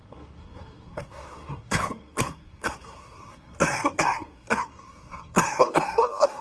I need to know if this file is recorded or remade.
remade